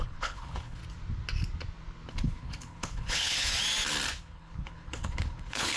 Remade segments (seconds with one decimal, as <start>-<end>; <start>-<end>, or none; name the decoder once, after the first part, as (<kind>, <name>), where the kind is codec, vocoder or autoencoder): 0.0-0.8 (codec, HILCodec); 2.1-3.5; 4.2-5.8